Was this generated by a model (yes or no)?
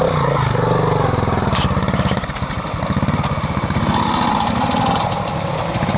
no